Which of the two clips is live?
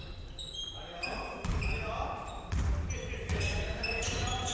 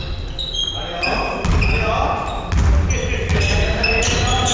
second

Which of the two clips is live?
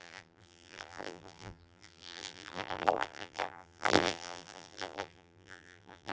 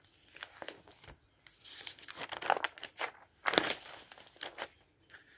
second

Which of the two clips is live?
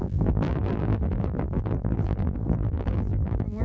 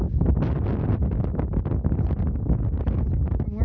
second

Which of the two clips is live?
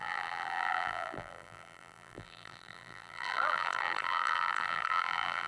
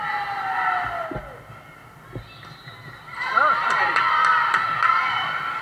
second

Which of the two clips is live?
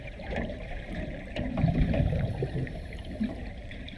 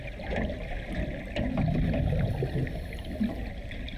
second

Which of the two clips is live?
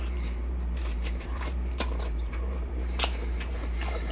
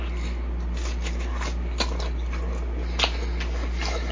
second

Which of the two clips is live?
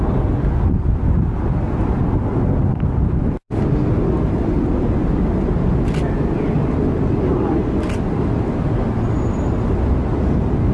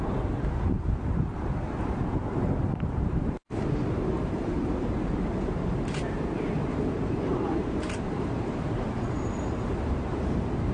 first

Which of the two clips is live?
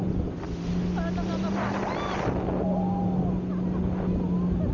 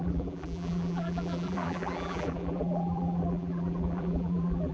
first